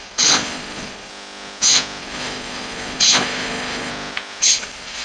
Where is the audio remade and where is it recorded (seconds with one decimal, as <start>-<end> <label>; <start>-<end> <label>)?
0.0-1.1 remade; 1.1-2.0 recorded; 2.0-3.9 remade; 3.9-4.4 recorded; 4.4-5.0 remade